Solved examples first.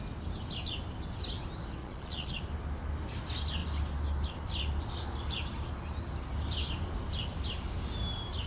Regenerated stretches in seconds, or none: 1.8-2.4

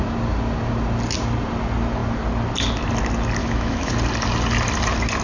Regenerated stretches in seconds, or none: 3.4-3.9

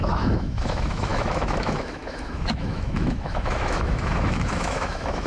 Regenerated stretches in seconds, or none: 0.0-5.3

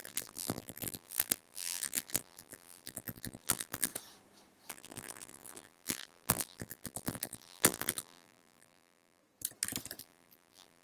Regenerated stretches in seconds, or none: 0.0-3.9; 4.7-9.2; 10.0-10.8

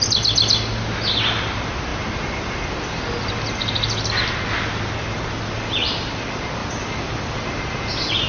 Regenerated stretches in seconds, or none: none

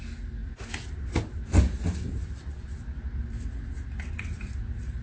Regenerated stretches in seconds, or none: none

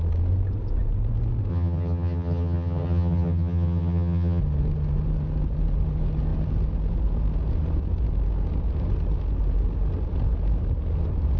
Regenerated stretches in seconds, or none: 1.5-4.4

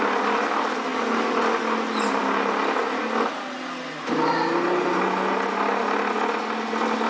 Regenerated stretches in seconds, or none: none